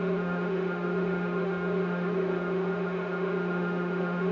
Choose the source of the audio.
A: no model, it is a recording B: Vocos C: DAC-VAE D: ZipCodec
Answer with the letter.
C